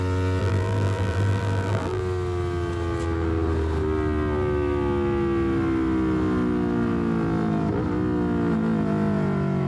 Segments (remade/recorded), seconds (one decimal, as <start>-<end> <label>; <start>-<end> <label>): 0.0-0.4 recorded; 0.4-2.0 remade; 2.0-9.7 recorded